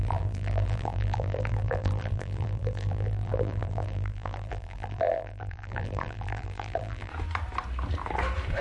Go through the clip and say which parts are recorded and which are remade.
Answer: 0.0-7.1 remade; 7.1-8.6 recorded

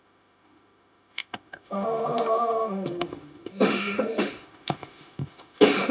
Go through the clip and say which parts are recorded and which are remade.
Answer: 0.0-5.9 remade

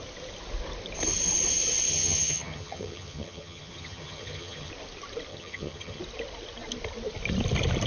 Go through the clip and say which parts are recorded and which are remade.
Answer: 0.0-1.9 recorded; 1.9-4.7 remade; 4.7-5.3 recorded; 5.3-6.0 remade; 6.0-7.9 recorded

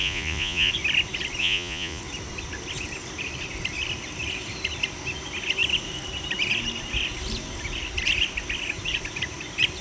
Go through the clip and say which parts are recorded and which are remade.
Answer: 0.0-0.7 remade; 0.7-1.4 recorded; 1.4-2.0 remade; 2.0-9.8 recorded

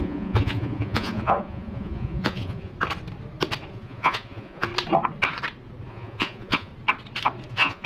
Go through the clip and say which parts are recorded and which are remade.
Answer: 0.0-2.7 remade; 2.7-3.7 recorded; 3.7-4.7 remade; 4.7-5.9 recorded; 5.9-6.7 remade; 6.7-7.5 recorded; 7.5-7.9 remade

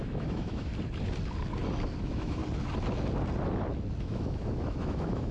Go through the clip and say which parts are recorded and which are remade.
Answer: 0.0-0.7 remade; 0.7-2.0 recorded; 2.0-2.4 remade; 2.4-4.0 recorded; 4.0-5.3 remade

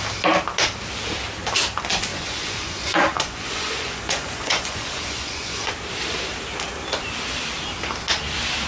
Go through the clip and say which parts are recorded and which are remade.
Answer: 0.0-2.1 recorded; 2.1-5.7 remade; 5.7-8.7 recorded